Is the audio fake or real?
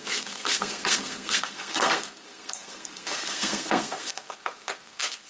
fake